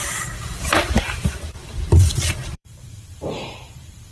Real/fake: fake